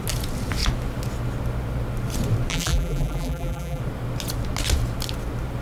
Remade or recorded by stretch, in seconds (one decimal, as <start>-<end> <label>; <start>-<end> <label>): 0.0-2.5 recorded; 2.5-3.8 remade; 3.8-5.6 recorded